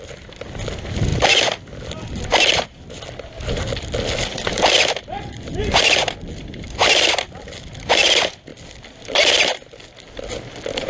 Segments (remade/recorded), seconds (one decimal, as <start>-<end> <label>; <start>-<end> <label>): 0.0-10.9 recorded